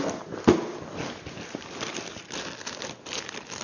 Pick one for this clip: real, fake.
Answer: real